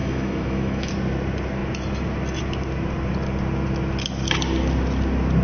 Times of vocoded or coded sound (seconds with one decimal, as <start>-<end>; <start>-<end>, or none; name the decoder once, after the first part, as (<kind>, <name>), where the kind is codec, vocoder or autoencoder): 0.0-0.9 (autoencoder, DAC-VAE)